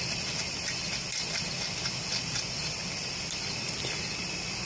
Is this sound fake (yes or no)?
yes